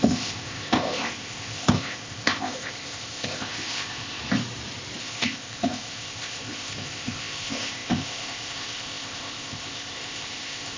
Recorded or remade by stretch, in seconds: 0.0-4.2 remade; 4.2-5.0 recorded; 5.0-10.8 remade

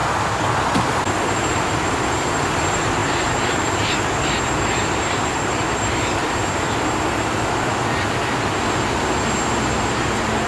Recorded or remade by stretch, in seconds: 0.0-1.3 recorded; 1.3-6.2 remade; 6.2-9.9 recorded; 9.9-10.5 remade

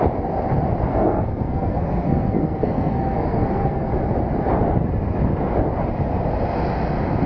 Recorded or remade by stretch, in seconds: 0.0-0.9 recorded; 0.9-3.9 remade; 3.9-7.3 recorded

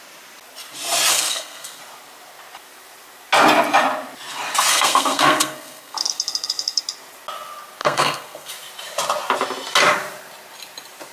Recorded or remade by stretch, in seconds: 0.0-1.1 recorded; 1.1-1.8 remade; 1.8-4.7 recorded; 4.7-6.8 remade; 6.8-7.8 recorded; 7.8-8.5 remade; 8.5-11.1 recorded

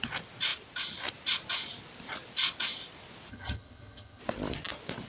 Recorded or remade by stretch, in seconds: 0.0-3.3 recorded; 3.3-4.2 remade; 4.2-5.1 recorded

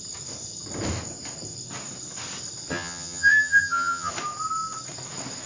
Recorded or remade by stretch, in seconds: 0.0-2.7 recorded; 2.7-4.1 remade; 4.1-5.5 recorded

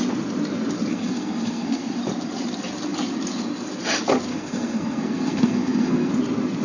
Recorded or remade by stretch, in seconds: 0.0-0.9 recorded; 0.9-2.0 remade; 2.0-4.3 recorded; 4.3-6.1 remade; 6.1-6.6 recorded

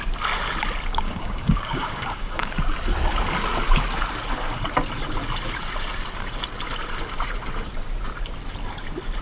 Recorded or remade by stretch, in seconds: 0.0-0.9 recorded; 0.9-2.5 remade; 2.5-9.2 recorded